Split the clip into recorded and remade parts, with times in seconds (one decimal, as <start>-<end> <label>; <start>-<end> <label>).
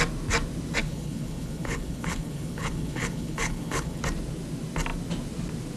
0.0-0.8 recorded; 0.8-4.0 remade; 4.0-5.8 recorded